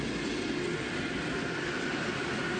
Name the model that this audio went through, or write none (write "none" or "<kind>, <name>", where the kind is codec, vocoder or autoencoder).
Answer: none